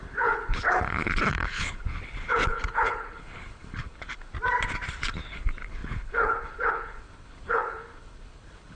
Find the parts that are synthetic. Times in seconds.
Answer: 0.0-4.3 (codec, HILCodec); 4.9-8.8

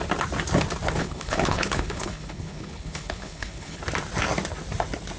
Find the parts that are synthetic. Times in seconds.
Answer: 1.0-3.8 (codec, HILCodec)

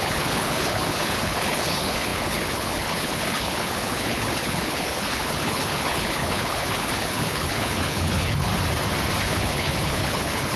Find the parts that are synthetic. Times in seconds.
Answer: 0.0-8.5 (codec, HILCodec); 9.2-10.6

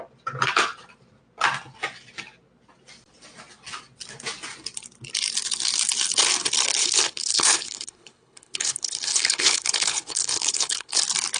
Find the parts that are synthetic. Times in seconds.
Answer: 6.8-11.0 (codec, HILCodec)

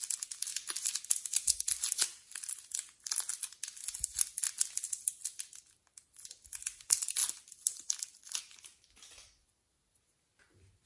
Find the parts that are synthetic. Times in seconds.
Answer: none